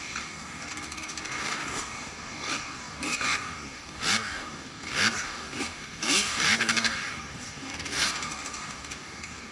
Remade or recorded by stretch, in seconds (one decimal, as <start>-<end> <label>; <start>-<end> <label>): 0.0-9.5 remade